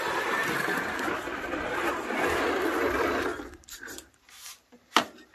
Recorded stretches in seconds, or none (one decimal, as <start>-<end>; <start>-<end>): 0.4-3.6